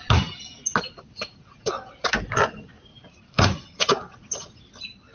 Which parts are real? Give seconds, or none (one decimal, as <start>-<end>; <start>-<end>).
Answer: 0.0-1.1; 1.7-2.9; 4.6-5.1